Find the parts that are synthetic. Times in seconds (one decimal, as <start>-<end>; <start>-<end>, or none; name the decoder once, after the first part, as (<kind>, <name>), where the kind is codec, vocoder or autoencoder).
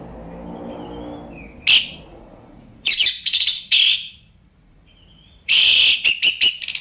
2.1-6.2 (vocoder, Vocos)